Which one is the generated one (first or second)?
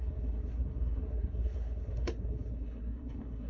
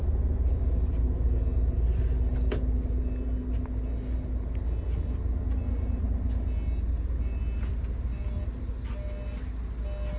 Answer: first